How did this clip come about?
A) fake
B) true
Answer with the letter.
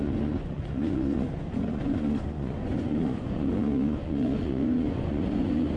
A